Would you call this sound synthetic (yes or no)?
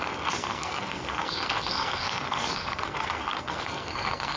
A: yes